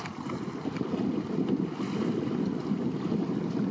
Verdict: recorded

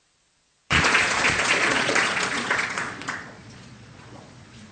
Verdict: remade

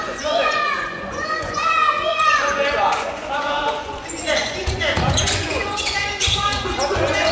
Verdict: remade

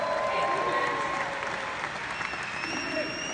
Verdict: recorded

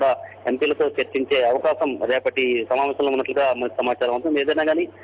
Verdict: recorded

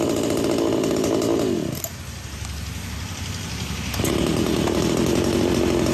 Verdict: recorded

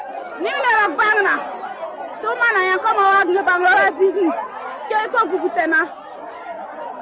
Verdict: recorded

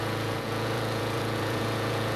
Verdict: remade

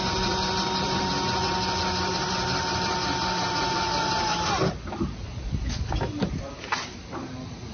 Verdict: recorded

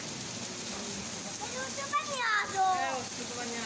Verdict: recorded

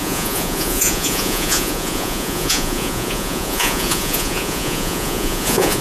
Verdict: remade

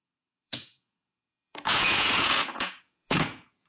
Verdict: remade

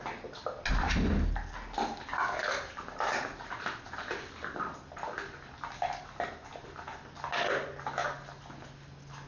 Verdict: recorded